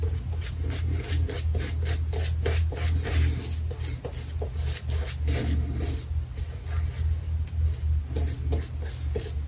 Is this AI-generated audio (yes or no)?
no